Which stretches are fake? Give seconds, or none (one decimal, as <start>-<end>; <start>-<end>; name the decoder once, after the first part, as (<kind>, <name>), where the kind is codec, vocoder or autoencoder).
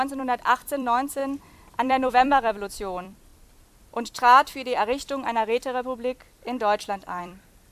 0.0-3.3 (vocoder, BigVGAN v2); 7.2-7.7